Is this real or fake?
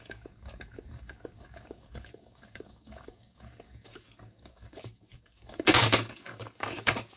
fake